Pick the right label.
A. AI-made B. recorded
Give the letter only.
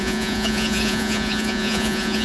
A